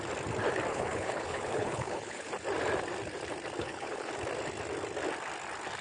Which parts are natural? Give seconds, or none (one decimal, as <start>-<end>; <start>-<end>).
0.0-0.7; 2.3-3.6; 4.1-5.8